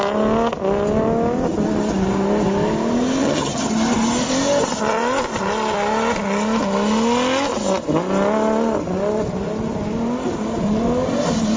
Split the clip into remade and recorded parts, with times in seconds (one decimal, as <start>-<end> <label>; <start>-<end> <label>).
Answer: 0.0-3.2 recorded; 3.2-3.7 remade; 3.7-11.6 recorded